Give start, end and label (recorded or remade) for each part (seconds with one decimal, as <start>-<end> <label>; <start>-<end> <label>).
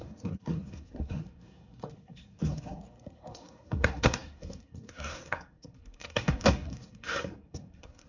0.0-8.1 remade